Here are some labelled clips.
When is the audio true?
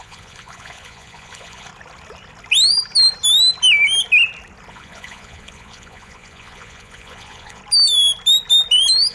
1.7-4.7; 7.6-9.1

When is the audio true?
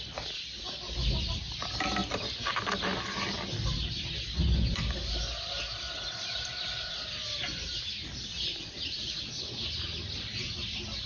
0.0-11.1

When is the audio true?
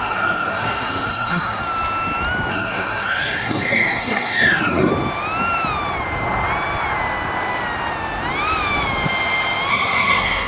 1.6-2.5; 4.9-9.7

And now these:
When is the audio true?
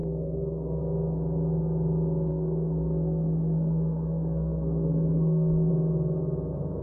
0.8-2.3; 5.7-6.8